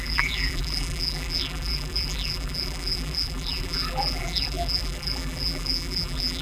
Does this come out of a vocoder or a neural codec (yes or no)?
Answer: yes